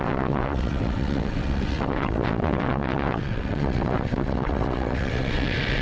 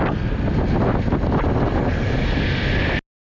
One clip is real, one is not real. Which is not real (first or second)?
first